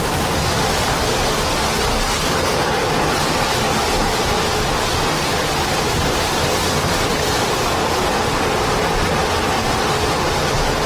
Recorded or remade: recorded